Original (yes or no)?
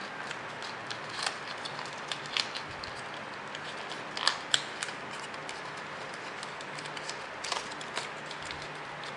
yes